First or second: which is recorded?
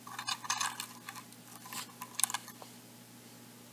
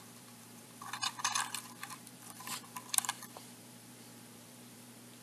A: first